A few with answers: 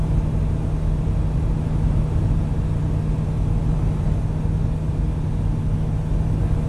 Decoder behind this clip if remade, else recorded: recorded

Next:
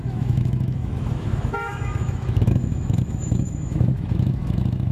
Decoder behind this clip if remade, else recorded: remade, autoencoder, DAC-VAE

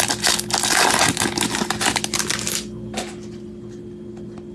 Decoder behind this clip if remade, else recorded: recorded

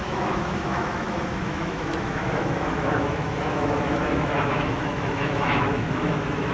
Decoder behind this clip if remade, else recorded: remade, autoencoder, DAC-VAE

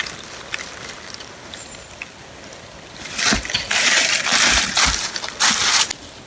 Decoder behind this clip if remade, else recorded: recorded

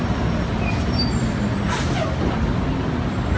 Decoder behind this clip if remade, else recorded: recorded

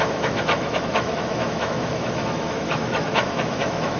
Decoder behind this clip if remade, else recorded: remade, autoencoder, DAC-VAE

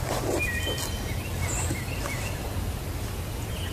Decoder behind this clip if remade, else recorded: recorded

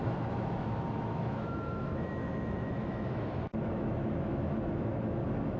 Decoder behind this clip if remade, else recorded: remade, autoencoder, DAC-VAE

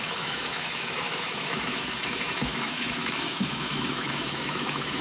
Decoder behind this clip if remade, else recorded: remade, autoencoder, DAC-VAE